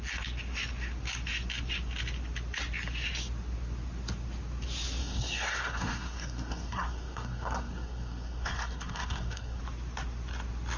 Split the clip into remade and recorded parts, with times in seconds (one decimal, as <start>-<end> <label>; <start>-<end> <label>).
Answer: 0.0-5.0 recorded; 5.0-9.6 remade; 9.6-10.8 recorded